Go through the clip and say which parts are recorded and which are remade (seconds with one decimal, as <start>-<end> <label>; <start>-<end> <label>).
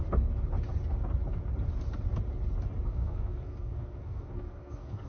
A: 0.0-2.9 recorded; 2.9-5.1 remade